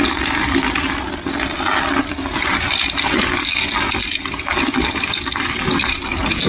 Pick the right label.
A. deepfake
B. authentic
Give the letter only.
B